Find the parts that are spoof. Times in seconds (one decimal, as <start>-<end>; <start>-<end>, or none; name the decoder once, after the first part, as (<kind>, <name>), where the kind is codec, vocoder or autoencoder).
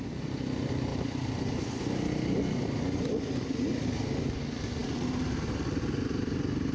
0.9-1.6 (vocoder, BigVGAN v2)